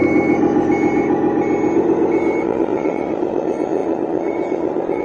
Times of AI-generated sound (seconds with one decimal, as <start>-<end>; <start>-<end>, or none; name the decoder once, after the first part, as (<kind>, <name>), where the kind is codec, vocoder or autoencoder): 2.4-5.0 (vocoder, Vocos)